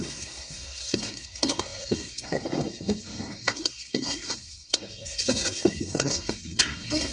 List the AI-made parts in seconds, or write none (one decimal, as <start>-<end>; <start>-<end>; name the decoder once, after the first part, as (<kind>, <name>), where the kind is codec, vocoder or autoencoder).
0.0-7.1 (codec, SNAC)